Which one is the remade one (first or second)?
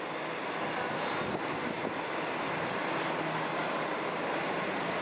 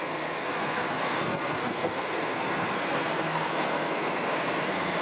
second